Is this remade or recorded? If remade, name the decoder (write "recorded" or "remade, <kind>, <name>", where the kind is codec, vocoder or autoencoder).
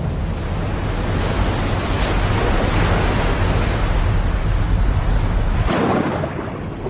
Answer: recorded